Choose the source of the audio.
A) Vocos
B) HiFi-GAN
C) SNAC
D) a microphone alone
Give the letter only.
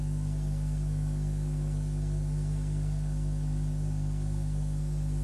C